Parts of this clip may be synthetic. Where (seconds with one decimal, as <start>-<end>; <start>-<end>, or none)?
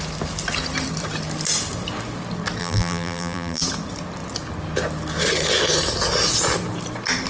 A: 2.6-3.6